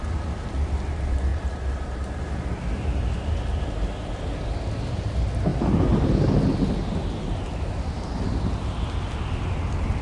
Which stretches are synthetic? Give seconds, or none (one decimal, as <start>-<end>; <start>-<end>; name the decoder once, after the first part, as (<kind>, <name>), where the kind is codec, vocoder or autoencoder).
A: 1.3-2.2 (vocoder, BigVGAN v2)